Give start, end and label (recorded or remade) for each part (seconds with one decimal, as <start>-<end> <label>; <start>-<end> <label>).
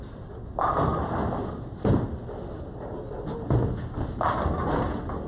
0.0-5.3 recorded